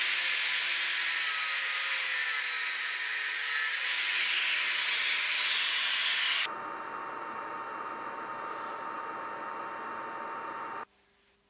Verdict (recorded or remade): recorded